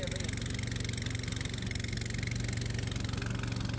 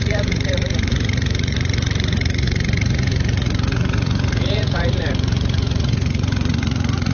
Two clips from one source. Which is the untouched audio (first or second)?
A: first